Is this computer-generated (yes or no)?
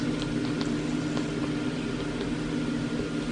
no